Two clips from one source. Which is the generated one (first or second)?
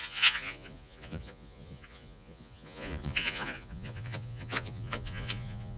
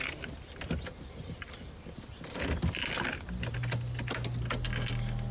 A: first